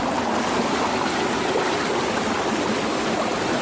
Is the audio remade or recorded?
recorded